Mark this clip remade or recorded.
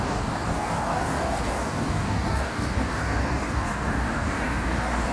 remade